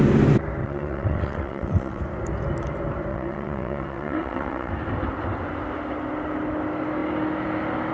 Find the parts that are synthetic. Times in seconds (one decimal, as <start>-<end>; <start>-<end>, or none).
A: 0.6-2.0; 3.1-4.7